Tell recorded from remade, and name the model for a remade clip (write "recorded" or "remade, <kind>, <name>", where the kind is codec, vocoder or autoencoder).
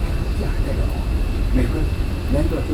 recorded